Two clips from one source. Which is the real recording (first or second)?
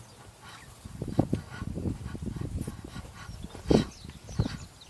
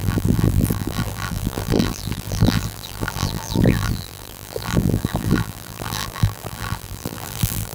first